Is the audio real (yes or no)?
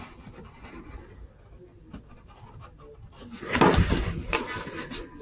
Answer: yes